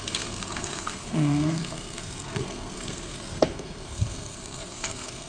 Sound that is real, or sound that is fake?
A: fake